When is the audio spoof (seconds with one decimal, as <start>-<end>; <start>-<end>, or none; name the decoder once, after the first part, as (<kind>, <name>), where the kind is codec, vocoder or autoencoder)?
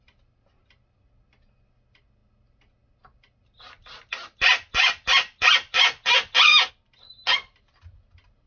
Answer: none